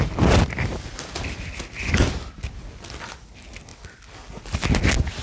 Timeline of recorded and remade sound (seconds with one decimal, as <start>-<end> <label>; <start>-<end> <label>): 0.0-5.2 recorded